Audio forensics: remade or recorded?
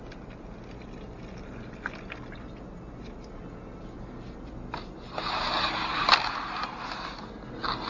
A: recorded